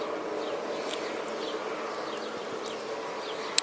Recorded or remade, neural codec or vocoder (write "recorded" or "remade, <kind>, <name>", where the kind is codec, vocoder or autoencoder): recorded